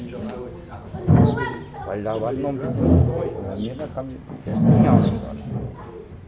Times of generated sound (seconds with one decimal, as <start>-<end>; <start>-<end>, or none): none